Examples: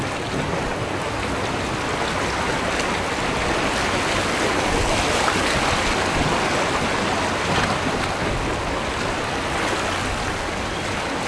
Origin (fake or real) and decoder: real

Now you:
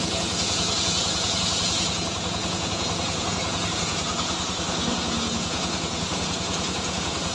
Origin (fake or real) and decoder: fake, vocoder, Vocos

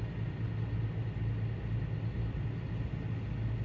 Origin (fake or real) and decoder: real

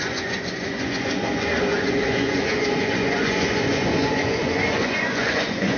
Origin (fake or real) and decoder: fake, vocoder, Vocos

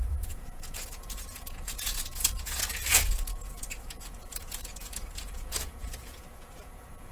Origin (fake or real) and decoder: fake, vocoder, Vocos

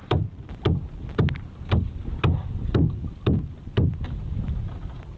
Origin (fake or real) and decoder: real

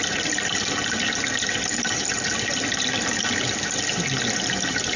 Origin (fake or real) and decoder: real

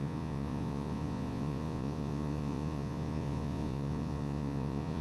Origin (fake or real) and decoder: fake, vocoder, Vocos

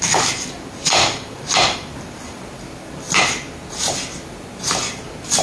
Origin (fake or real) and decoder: real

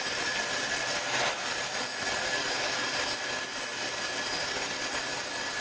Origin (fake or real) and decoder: real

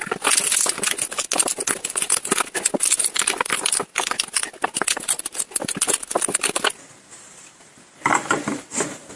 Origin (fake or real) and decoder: real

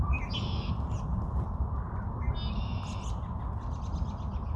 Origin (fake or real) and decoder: real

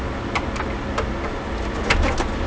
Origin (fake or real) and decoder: real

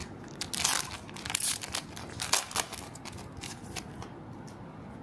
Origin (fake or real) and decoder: real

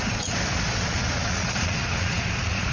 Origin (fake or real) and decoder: fake, vocoder, Vocos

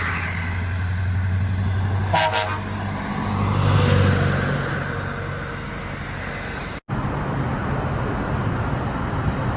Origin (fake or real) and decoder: real